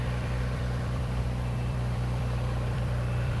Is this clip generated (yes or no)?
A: yes